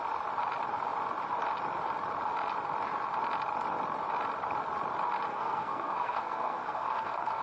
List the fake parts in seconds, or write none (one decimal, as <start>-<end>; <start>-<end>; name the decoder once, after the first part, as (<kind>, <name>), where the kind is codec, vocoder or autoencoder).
5.3-7.4 (codec, SNAC)

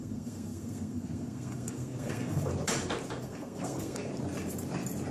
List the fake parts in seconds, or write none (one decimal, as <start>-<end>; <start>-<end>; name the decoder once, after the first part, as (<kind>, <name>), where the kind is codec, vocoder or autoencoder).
0.0-2.5 (codec, SNAC); 3.1-4.1

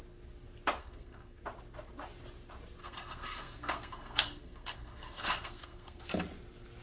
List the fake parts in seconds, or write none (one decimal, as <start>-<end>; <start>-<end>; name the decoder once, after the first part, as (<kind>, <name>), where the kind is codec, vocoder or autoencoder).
0.8-1.4 (codec, SNAC); 2.8-6.1

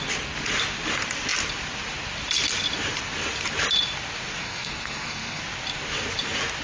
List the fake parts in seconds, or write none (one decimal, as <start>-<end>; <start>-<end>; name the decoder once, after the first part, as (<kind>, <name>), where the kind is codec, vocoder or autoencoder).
4.4-5.4 (codec, SNAC)

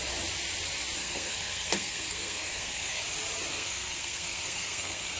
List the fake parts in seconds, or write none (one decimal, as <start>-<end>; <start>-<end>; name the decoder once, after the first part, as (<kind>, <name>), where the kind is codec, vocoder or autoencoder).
1.0-3.0 (codec, SNAC); 3.5-5.2

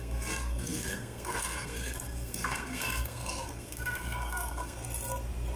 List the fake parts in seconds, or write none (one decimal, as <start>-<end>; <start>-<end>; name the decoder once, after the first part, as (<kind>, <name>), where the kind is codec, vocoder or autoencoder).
0.0-4.8 (codec, SNAC)